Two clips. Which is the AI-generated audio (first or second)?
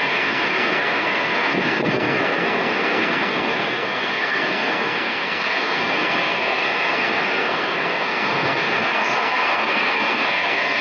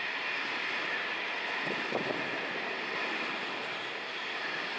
first